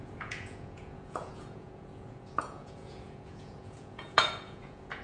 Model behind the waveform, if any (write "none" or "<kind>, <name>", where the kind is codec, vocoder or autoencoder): vocoder, Vocos